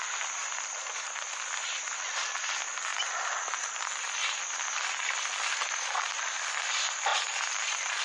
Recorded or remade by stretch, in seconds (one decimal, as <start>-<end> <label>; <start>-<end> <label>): 0.0-8.0 recorded